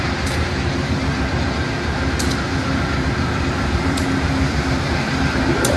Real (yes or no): no